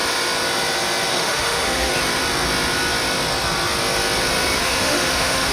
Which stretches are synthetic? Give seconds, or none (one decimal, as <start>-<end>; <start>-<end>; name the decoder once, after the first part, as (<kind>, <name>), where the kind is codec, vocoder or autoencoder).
1.1-1.9 (autoencoder, DAC-VAE); 4.6-5.5